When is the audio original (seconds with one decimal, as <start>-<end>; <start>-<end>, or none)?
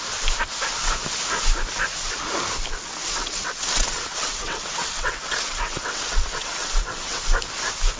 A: 0.0-3.2; 7.2-8.0